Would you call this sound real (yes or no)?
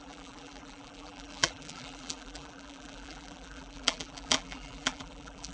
no